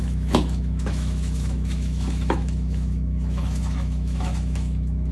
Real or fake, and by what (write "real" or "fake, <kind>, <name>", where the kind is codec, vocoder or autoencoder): fake, autoencoder, DAC-VAE